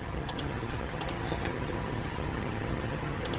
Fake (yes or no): yes